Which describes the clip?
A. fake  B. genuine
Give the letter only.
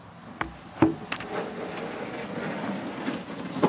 B